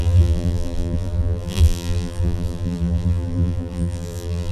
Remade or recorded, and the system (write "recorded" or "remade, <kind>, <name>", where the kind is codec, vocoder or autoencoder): remade, vocoder, BigVGAN v2